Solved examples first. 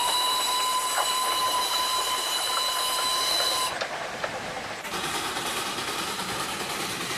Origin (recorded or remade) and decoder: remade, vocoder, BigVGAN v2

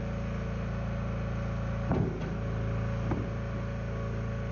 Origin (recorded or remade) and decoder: recorded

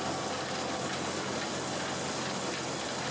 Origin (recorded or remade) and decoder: recorded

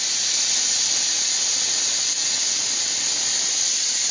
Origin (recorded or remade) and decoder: recorded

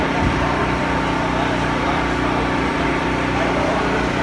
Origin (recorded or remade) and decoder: remade, vocoder, BigVGAN v2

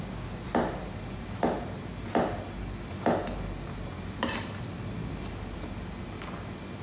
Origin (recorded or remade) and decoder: recorded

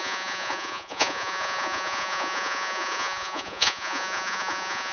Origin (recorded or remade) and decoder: remade, vocoder, Vocos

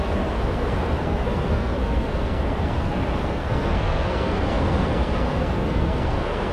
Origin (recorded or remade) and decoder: remade, codec, SNAC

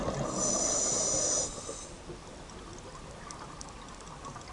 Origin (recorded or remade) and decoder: recorded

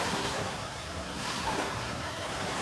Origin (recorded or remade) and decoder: remade, codec, SNAC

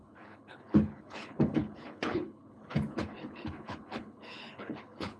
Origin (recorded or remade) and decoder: remade, codec, HILCodec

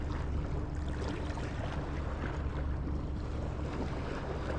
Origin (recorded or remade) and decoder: recorded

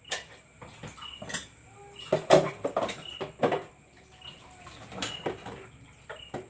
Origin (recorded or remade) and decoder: recorded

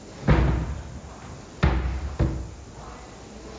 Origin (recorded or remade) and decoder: recorded